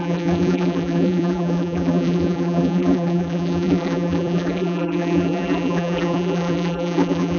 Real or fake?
fake